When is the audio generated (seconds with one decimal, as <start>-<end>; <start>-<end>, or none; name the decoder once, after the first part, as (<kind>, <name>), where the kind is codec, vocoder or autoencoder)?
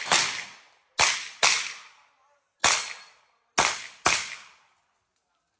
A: none